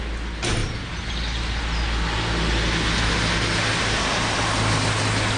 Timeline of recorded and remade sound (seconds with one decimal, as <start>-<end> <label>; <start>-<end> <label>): 0.0-5.4 recorded